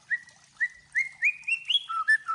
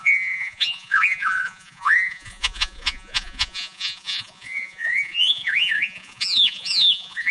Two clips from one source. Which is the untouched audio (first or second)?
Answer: first